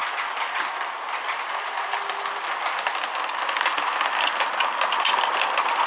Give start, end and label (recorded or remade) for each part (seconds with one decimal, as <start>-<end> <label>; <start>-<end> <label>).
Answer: 0.0-5.9 recorded